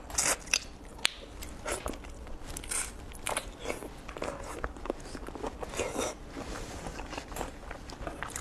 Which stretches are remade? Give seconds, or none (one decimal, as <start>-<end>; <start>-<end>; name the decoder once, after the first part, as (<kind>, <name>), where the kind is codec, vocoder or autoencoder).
none